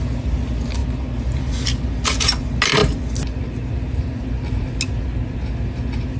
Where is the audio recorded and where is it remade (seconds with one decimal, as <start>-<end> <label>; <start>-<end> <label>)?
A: 0.0-6.2 recorded